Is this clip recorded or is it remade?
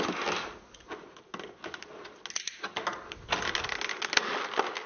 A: recorded